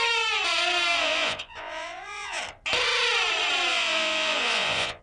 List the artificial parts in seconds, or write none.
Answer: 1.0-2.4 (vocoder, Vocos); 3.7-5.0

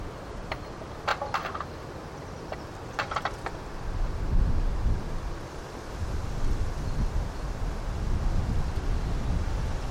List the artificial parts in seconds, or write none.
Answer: 1.1-4.5 (vocoder, BigVGAN v2)

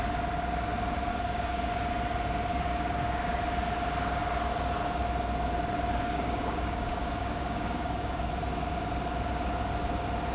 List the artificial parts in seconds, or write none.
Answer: 1.1-1.7 (codec, DAC); 2.5-3.4; 5.9-8.3

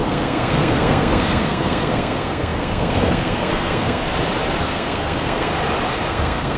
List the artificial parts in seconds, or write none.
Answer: 0.0-4.0 (codec, SNAC); 4.6-5.5; 6.1-6.6

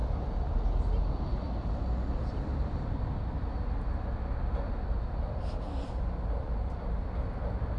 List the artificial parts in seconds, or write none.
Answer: none

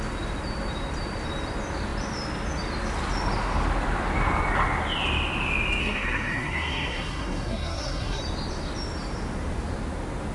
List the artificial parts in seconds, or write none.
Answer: 5.8-8.2 (codec, SNAC)